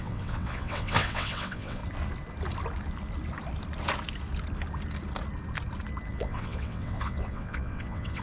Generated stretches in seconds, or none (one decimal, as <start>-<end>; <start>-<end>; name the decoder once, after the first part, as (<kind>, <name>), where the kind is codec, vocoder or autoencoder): 0.0-1.8 (vocoder, WaveNeXt); 6.1-8.2